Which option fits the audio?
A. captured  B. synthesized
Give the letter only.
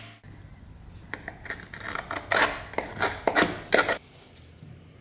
A